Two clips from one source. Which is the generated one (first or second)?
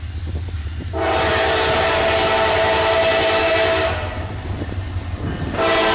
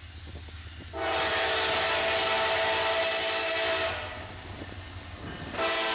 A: first